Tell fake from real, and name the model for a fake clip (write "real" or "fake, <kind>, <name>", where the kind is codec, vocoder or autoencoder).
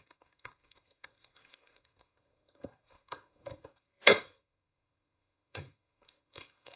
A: fake, codec, SNAC